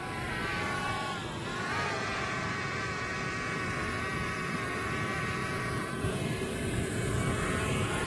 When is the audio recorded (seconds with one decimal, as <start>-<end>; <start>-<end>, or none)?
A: 0.0-1.5; 3.1-5.4

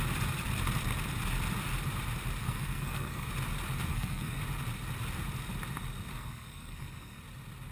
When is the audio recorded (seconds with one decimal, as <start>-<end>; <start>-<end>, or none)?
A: 0.0-2.4; 3.3-3.9; 4.4-6.1; 7.2-7.7

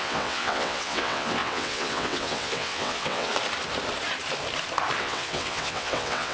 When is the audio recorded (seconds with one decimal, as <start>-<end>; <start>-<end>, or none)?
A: 3.3-5.0

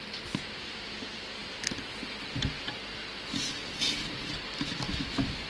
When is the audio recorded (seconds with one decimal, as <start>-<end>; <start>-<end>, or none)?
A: 0.0-5.5

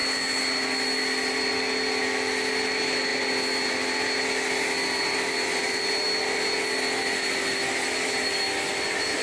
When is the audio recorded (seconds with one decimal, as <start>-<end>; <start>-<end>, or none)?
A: 0.0-9.2

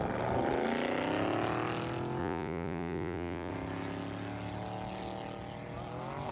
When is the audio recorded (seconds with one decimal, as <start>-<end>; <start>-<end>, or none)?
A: 0.0-2.2; 3.5-6.3

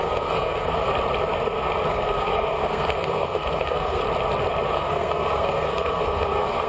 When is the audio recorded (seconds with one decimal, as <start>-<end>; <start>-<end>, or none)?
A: 0.9-1.9; 4.0-4.7

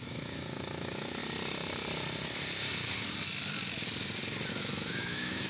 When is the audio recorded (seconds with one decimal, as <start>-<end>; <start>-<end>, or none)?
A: 1.2-4.5